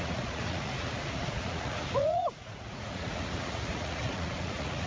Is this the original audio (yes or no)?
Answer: no